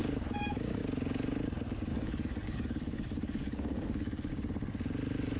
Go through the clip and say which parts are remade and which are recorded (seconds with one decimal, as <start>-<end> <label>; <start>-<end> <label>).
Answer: 0.0-1.9 recorded; 1.9-4.3 remade; 4.3-5.4 recorded